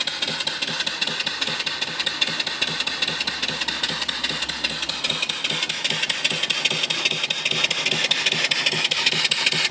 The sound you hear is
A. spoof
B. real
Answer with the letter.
B